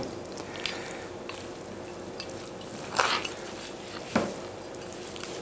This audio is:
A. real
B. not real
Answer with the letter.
A